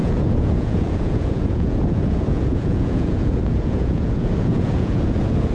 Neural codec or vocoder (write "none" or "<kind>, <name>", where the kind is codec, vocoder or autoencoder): vocoder, Vocos